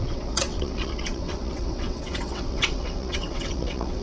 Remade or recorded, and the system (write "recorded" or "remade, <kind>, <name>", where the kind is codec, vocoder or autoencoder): remade, vocoder, WaveNeXt